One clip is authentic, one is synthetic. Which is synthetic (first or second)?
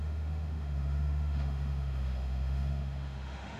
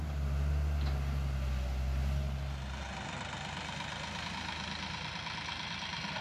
first